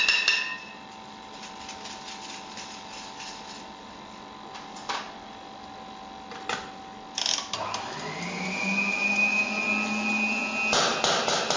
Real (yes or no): yes